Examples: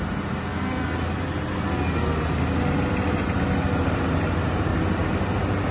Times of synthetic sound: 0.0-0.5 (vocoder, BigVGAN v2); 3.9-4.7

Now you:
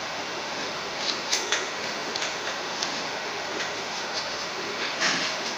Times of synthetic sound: 0.0-5.6 (autoencoder, DAC-VAE)

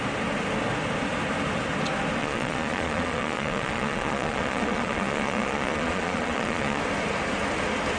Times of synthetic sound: 2.2-6.8 (vocoder, Vocos)

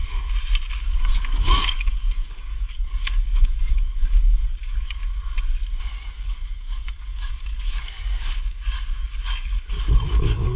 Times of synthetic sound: 0.8-5.0 (codec, DAC); 5.8-10.6

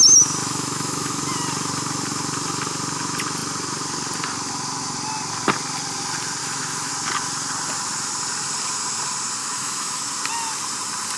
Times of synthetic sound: 0.4-1.2 (autoencoder, DAC-VAE); 6.4-6.9; 9.4-10.0

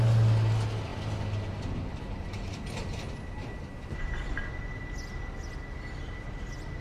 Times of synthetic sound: none

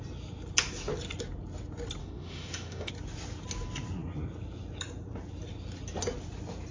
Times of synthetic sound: 2.0-2.9 (autoencoder, DAC-VAE)